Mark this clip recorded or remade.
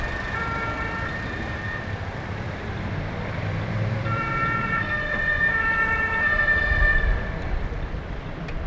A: remade